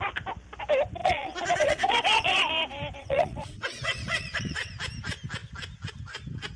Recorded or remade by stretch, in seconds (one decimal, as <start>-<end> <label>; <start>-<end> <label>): 0.0-1.0 recorded; 1.0-2.5 remade; 2.5-3.0 recorded; 3.0-4.7 remade; 4.7-6.6 recorded